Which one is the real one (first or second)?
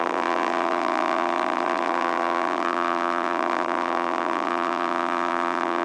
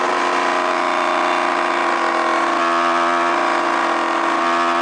second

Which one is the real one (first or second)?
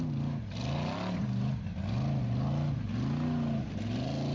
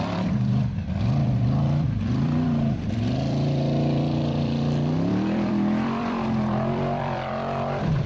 first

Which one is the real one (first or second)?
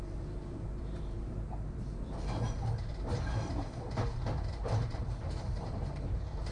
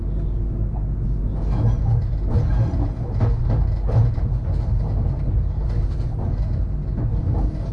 second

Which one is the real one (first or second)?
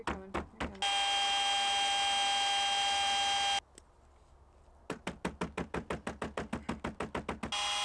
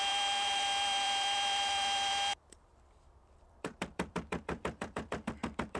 first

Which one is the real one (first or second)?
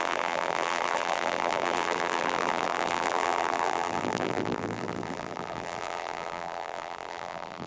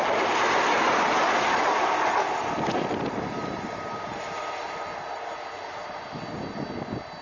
second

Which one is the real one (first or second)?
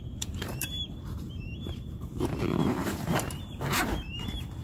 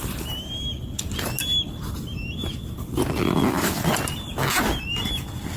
second